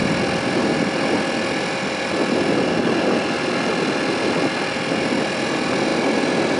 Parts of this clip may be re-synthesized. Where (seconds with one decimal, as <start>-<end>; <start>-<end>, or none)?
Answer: none